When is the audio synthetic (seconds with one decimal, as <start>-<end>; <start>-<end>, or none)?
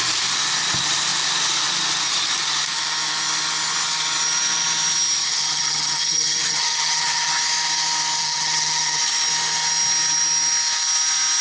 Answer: 5.2-7.3; 8.2-9.0